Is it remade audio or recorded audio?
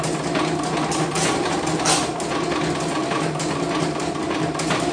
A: recorded